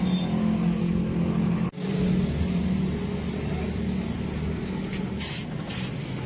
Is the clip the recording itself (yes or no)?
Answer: yes